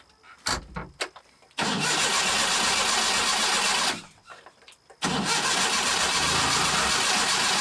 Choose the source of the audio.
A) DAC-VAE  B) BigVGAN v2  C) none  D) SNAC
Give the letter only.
C